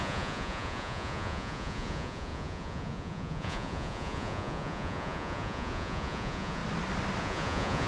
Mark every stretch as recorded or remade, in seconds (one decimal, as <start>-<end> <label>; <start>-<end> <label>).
0.0-6.6 remade; 6.6-7.2 recorded; 7.2-7.9 remade